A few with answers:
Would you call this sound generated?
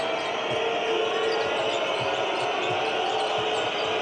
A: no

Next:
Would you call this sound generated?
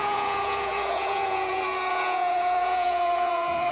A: yes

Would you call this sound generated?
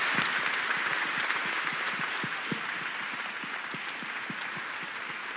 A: no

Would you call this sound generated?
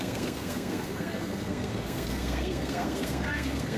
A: yes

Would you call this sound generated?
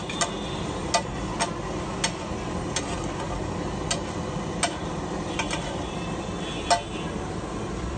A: no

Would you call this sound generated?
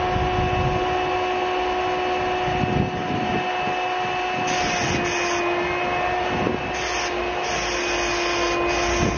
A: no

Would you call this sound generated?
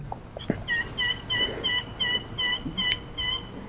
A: no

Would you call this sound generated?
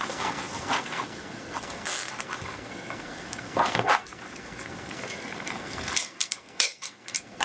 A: yes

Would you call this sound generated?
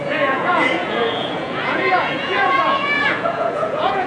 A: yes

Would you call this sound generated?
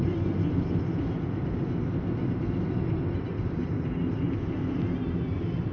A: no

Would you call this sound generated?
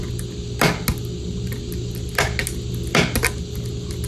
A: no